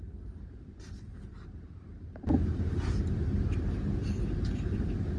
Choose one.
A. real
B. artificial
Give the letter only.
B